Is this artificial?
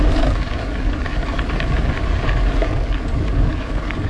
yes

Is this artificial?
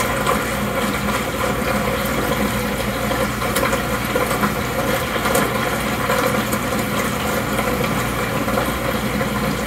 no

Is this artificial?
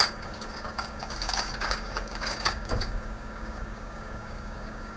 yes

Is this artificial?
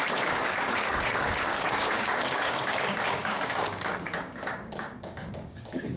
yes